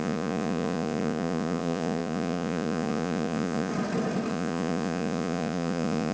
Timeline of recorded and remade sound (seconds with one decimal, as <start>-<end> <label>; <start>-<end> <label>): 0.0-3.7 remade; 3.7-4.3 recorded; 4.3-6.1 remade